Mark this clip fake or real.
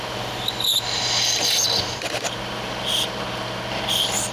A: real